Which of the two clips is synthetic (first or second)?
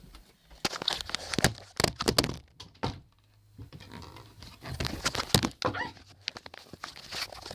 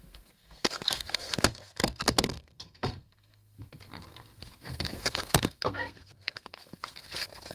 second